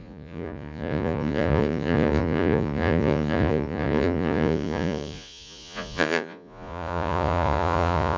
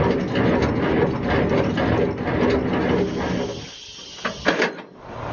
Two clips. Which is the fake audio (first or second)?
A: first